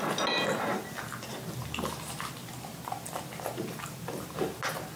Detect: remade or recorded recorded